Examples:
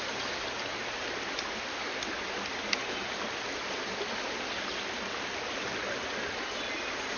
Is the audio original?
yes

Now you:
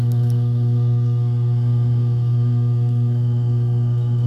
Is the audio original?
no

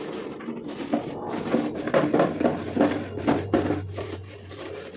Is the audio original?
yes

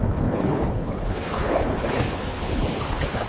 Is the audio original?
no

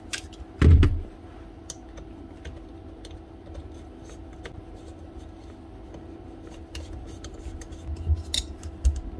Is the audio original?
yes